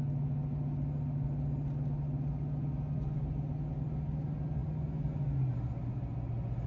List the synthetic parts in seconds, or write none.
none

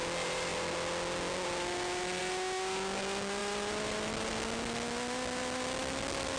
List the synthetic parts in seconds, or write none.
3.4-4.3

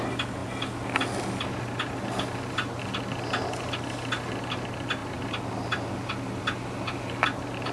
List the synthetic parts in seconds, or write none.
5.0-5.8

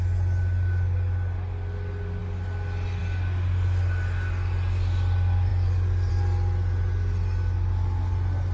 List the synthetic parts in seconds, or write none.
none